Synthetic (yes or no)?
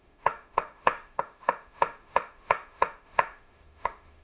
yes